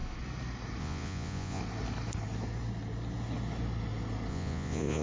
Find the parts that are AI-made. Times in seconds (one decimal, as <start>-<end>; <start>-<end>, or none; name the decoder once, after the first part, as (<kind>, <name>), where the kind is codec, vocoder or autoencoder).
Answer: 0.8-1.6 (vocoder, Vocos); 4.3-5.0